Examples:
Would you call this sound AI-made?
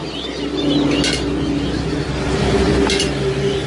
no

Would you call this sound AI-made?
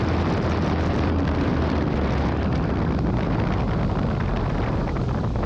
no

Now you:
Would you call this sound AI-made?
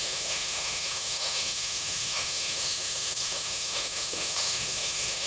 yes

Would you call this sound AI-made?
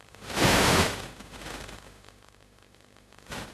yes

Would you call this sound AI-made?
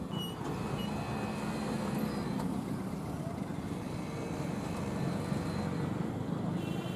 no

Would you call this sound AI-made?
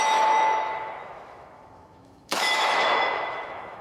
yes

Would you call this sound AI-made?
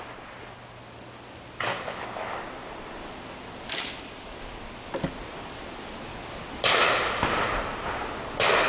no